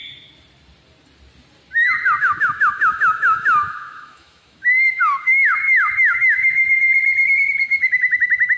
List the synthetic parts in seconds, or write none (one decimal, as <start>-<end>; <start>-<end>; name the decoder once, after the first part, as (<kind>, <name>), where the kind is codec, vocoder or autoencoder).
2.2-6.9 (autoencoder, DAC-VAE); 7.6-8.6